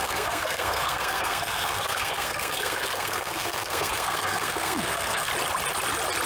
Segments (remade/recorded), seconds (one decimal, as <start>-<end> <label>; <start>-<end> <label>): 0.0-5.3 remade; 5.3-6.3 recorded